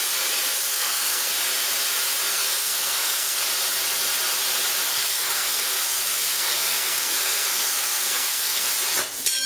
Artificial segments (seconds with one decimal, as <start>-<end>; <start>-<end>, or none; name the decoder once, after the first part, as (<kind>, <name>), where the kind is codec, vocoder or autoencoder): 0.7-1.3 (codec, SNAC); 2.3-3.4; 4.9-8.7